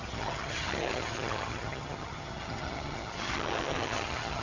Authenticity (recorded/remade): remade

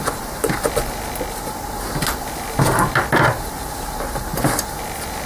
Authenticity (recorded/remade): recorded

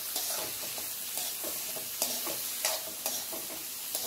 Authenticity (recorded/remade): recorded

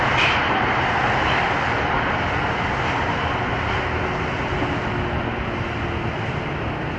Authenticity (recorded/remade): recorded